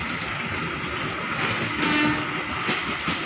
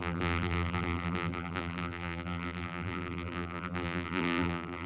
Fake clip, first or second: second